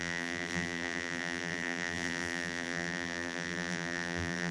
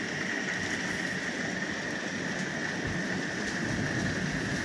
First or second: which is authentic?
second